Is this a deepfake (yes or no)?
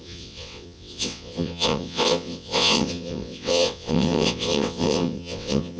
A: yes